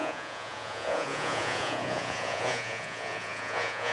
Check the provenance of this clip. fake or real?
fake